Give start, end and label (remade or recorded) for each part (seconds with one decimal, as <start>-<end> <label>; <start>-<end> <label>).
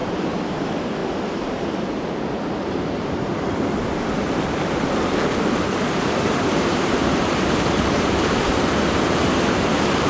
0.0-0.5 recorded; 0.5-3.3 remade; 3.3-5.5 recorded; 5.5-10.1 remade